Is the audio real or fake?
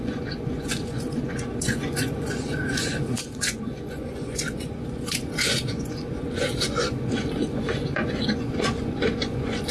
fake